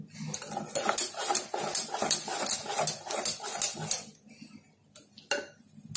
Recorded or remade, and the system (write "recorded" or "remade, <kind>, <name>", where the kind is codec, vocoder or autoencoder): recorded